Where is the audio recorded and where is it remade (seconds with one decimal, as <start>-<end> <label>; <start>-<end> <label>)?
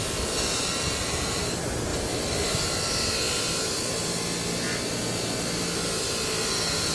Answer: 0.0-0.6 recorded; 0.6-1.4 remade; 1.4-6.9 recorded